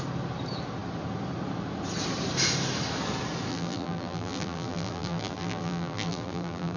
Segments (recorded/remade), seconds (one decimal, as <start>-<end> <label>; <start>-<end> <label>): 0.0-3.5 recorded; 3.5-6.8 remade